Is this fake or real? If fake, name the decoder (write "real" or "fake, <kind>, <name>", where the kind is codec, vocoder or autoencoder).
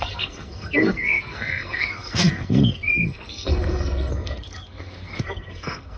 fake, codec, SNAC